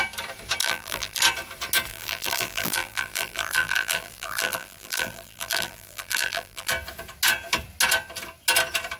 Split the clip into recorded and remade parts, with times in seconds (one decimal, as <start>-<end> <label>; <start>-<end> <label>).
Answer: 0.0-0.6 recorded; 0.6-1.2 remade; 1.2-1.9 recorded; 1.9-6.7 remade; 6.7-9.0 recorded